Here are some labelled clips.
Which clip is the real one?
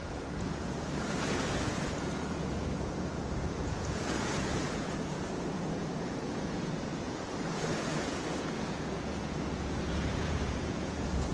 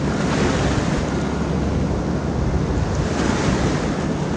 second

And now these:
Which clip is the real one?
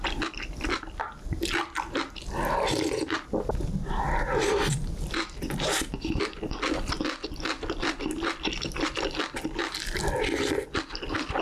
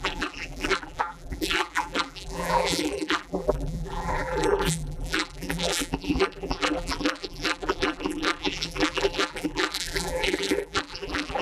first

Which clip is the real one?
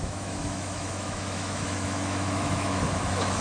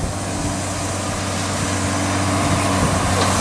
second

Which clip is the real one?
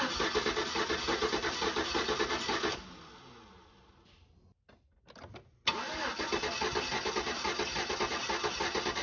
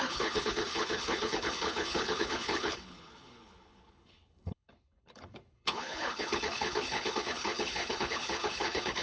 first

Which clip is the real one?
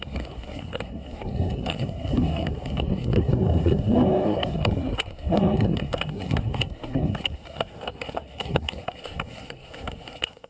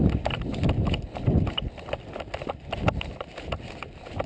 second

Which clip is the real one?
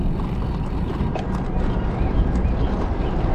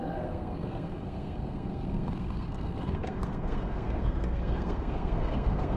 first